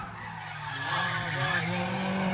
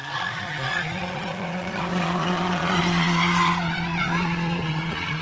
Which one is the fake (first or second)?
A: second